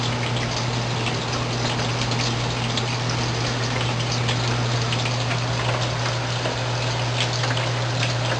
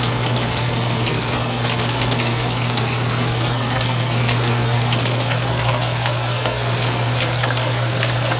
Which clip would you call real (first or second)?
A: first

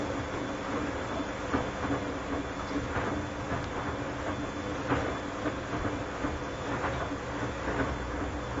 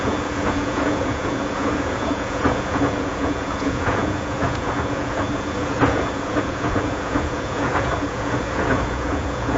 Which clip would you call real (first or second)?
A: first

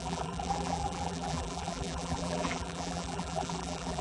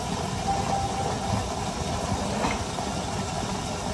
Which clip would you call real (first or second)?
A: second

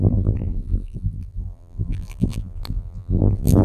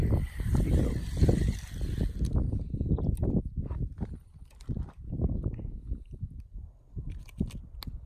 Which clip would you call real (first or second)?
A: second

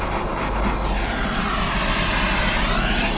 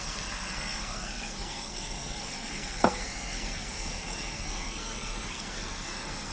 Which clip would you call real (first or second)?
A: first